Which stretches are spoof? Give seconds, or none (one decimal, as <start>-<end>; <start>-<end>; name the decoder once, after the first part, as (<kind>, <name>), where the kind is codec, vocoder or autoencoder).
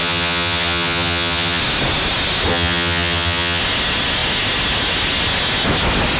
0.0-1.6 (vocoder, HiFi-GAN); 2.5-3.6